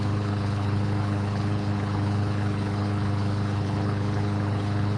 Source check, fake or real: fake